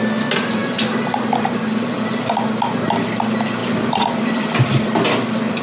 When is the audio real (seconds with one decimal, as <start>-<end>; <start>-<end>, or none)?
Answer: 0.0-0.6; 1.6-3.6